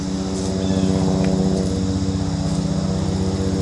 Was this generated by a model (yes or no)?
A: no